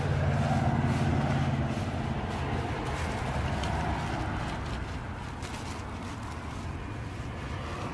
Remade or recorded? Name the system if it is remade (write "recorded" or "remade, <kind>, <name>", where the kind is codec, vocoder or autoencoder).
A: recorded